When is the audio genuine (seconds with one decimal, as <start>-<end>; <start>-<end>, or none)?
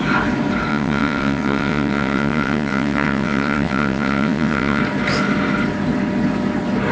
0.0-0.7; 4.8-6.9